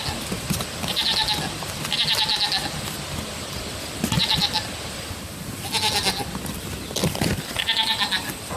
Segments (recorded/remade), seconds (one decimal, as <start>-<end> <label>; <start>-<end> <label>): 0.0-8.6 recorded